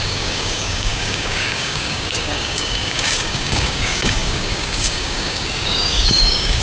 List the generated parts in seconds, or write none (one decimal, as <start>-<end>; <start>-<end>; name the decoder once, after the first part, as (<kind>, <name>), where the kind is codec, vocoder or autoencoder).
0.0-6.6 (codec, DAC)